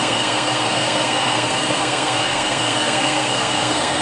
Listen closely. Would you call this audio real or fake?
fake